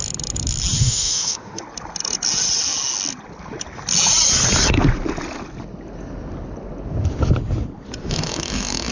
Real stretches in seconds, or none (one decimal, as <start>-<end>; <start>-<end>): 0.0-0.8; 1.6-8.0